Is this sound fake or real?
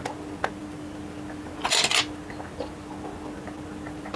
real